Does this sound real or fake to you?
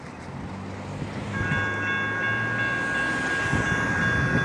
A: real